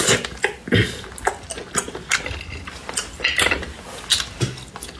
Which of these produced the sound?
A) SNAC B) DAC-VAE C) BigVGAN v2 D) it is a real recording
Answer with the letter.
D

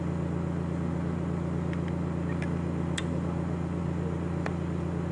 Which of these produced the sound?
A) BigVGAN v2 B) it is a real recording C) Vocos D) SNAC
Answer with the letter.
B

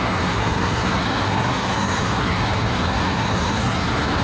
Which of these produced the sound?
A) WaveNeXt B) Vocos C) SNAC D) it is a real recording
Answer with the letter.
C